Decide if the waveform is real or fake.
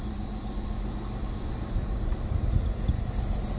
real